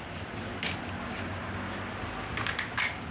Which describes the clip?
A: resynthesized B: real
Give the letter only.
B